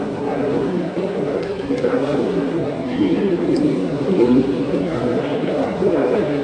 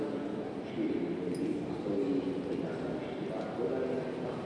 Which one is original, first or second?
second